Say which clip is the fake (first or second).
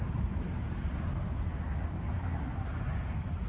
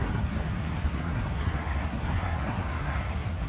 second